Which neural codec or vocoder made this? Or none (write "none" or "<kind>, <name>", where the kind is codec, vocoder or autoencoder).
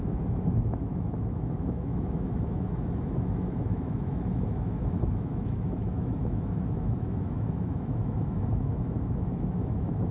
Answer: autoencoder, DAC-VAE